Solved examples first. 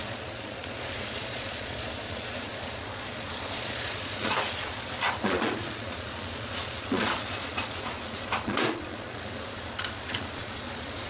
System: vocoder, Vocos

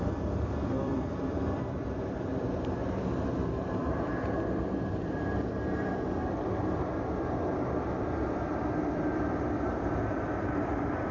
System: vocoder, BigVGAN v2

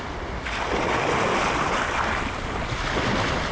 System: none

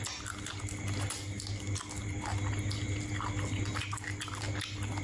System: none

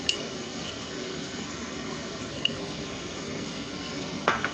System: codec, SNAC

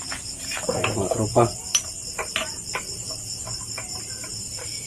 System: vocoder, BigVGAN v2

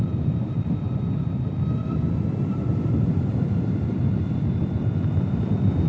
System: vocoder, BigVGAN v2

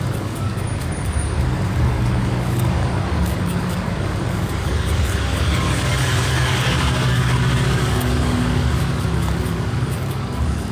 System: codec, DAC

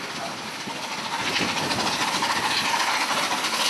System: none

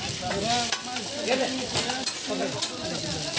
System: none